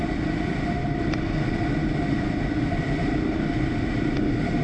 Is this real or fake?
real